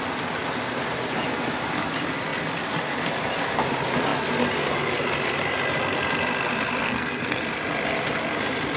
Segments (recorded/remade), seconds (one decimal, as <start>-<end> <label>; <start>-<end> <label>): 0.0-6.8 recorded; 6.8-7.4 remade; 7.4-8.8 recorded